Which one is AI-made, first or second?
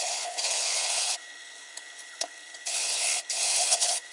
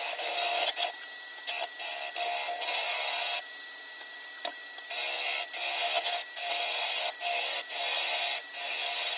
first